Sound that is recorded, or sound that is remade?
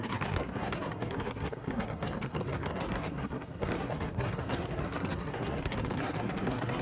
remade